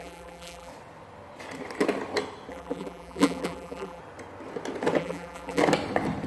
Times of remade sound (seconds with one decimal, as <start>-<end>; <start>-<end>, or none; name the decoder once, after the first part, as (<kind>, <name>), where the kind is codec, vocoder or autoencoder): 0.0-0.7 (vocoder, BigVGAN v2); 2.5-4.0; 5.0-5.6